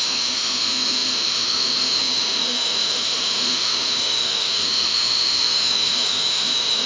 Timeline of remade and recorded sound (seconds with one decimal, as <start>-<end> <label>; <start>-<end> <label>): 0.0-6.9 remade